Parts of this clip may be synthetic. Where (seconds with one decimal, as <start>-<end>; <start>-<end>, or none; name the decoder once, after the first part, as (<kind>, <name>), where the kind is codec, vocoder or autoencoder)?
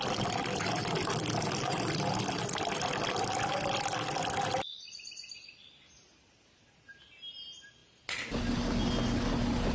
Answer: none